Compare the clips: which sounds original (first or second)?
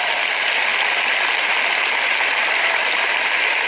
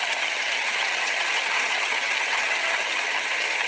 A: first